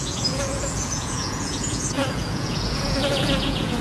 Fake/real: fake